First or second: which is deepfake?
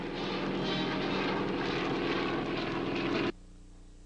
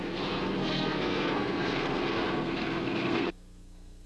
second